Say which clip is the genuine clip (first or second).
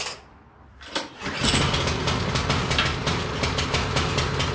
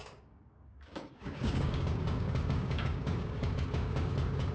first